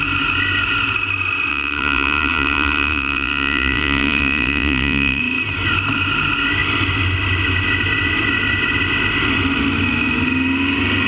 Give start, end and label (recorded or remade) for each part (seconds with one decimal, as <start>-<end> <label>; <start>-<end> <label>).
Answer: 0.0-1.5 recorded; 1.5-5.2 remade; 5.2-11.1 recorded